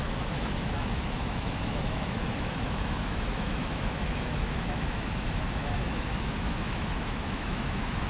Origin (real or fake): fake